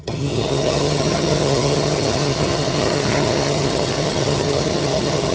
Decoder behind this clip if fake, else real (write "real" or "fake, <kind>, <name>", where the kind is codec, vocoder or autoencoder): fake, vocoder, HiFi-GAN